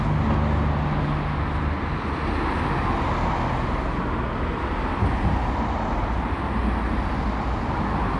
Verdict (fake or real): real